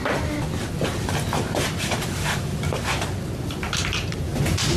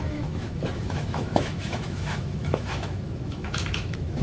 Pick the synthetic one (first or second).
second